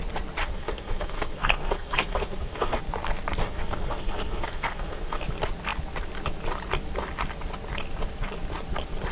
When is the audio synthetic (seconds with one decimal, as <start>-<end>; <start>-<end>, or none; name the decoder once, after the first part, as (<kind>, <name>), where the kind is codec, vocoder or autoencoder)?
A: 0.4-2.8 (codec, SNAC); 3.4-5.2